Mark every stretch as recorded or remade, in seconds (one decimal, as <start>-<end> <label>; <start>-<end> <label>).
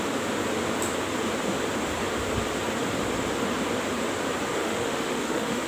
0.0-4.6 recorded; 4.6-5.7 remade